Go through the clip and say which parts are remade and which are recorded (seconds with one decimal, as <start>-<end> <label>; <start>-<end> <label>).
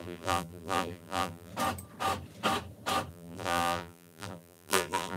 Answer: 0.0-1.5 remade; 1.5-3.1 recorded; 3.1-5.2 remade